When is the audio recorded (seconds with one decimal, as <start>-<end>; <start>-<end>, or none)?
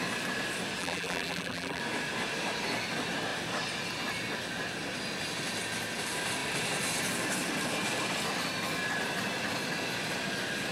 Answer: 0.0-0.8; 1.8-10.7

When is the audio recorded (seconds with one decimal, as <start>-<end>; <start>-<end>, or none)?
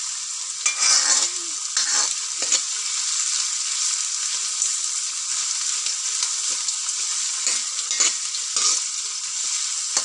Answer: 0.0-10.0